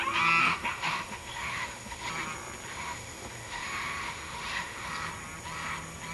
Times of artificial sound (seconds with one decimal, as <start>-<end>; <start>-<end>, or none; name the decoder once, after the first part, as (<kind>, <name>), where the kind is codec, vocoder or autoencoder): 0.4-2.1 (autoencoder, DAC-VAE); 2.7-4.9